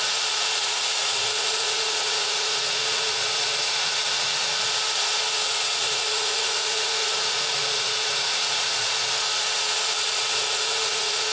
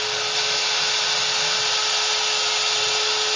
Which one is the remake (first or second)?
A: first